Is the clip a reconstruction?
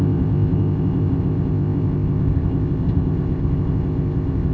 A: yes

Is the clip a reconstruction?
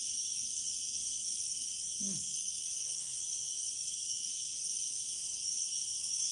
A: yes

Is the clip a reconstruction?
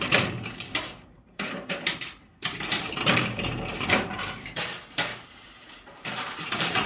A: yes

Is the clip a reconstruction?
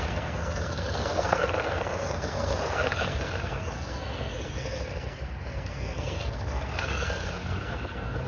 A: yes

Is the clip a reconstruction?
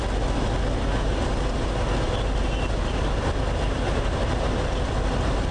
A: no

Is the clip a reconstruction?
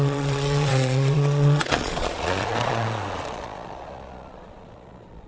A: yes